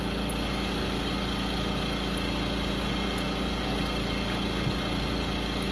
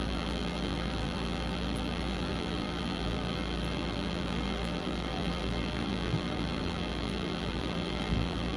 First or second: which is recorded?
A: first